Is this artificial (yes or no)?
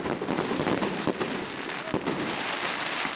yes